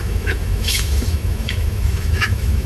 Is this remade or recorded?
remade